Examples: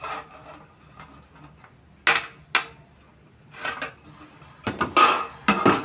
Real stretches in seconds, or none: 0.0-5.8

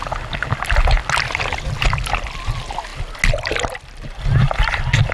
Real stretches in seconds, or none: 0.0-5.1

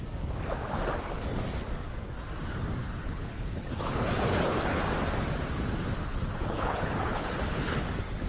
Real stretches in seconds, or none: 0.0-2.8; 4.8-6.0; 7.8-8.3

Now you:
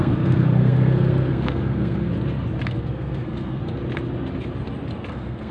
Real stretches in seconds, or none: 2.1-2.7; 3.6-5.1

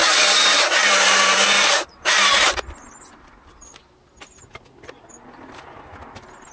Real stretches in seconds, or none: 2.3-6.5